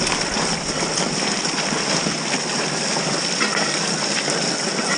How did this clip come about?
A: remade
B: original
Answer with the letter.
B